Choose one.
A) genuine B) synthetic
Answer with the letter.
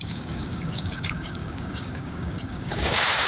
B